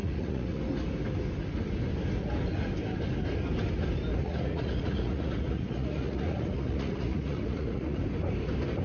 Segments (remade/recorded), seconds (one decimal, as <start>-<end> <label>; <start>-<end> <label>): 0.0-0.6 remade; 0.6-4.2 recorded; 4.2-8.0 remade; 8.0-8.8 recorded